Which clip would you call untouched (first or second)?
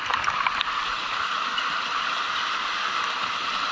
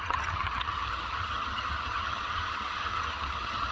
first